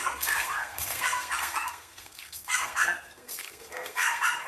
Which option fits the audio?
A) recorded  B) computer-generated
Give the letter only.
B